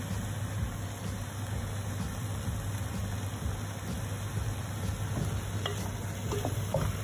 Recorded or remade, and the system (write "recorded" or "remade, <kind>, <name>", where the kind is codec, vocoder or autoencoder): recorded